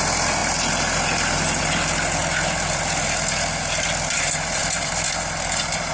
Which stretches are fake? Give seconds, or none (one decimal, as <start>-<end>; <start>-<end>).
2.2-2.8; 4.6-5.9